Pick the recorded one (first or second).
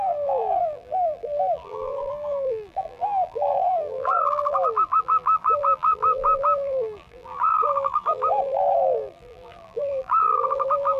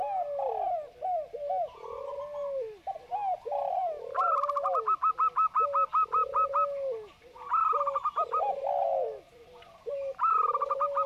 second